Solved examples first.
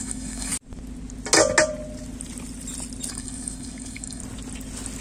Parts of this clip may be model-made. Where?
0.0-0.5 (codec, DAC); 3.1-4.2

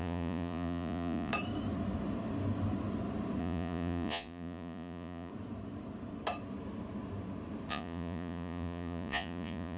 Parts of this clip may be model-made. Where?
0.0-1.3 (vocoder, Vocos); 3.4-5.3; 7.7-9.8

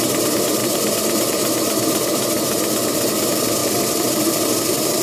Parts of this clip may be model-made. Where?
0.0-0.6 (vocoder, BigVGAN v2); 3.1-5.0

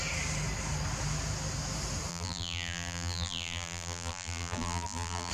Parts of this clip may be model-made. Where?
2.1-5.3 (vocoder, BigVGAN v2)

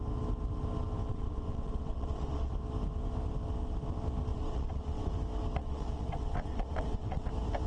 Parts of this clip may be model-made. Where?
1.1-2.5 (vocoder, WaveNeXt); 4.3-5.1; 5.6-7.3